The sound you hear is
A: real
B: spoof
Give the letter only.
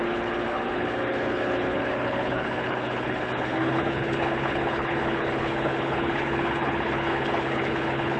B